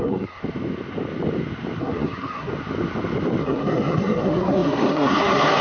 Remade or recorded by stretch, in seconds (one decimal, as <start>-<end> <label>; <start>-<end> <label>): 0.0-0.4 remade; 0.4-1.8 recorded; 1.8-2.5 remade; 2.5-3.4 recorded; 3.4-5.6 remade